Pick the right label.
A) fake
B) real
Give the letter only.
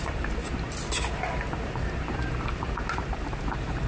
A